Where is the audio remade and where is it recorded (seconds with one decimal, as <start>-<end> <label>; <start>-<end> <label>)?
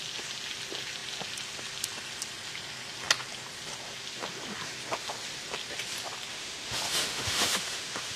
0.0-6.3 recorded; 6.3-8.2 remade